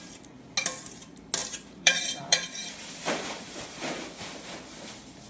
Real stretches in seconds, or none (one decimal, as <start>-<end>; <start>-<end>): 0.0-1.4; 3.9-5.3